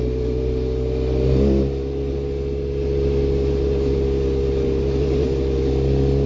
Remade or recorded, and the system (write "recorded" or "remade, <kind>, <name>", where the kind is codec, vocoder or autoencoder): recorded